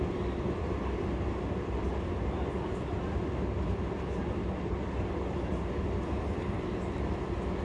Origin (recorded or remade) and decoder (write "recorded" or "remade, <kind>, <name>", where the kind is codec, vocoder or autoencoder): recorded